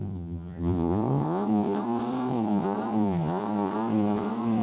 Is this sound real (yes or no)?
no